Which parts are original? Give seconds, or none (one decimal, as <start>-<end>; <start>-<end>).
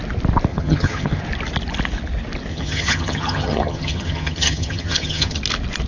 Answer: 0.0-0.5; 1.2-2.5; 5.4-5.9